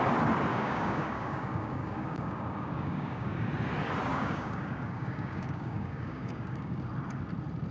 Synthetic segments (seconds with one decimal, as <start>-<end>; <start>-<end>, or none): 0.5-3.5; 4.1-6.9